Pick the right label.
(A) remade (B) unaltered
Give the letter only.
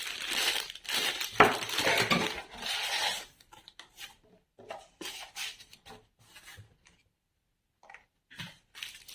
B